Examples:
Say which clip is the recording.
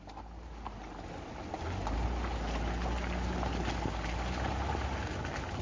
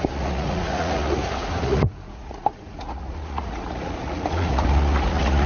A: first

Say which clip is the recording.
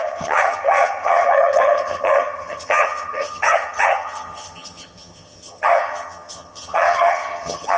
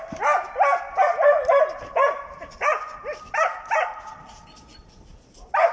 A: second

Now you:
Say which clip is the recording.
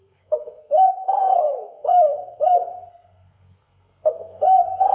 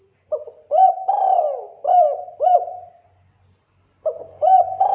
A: second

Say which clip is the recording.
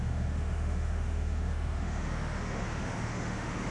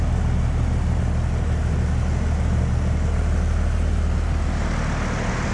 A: second